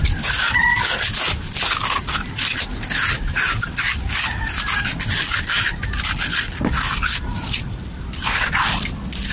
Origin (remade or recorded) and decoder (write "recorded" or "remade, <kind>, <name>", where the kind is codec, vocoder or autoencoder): recorded